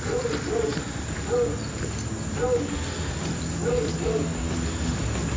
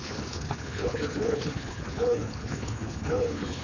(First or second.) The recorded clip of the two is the first